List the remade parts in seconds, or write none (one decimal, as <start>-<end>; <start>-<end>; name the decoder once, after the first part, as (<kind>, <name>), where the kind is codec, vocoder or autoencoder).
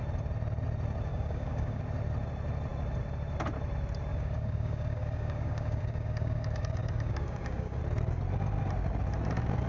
1.1-1.8 (codec, DAC); 4.1-7.8